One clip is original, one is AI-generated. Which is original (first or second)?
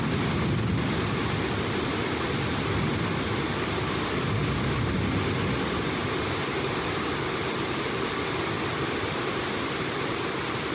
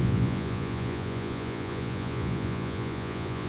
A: first